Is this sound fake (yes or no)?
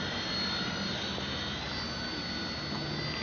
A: no